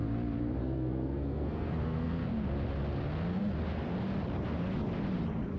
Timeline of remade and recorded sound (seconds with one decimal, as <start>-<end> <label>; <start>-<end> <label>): 0.0-0.6 recorded; 0.6-2.2 remade; 2.2-5.6 recorded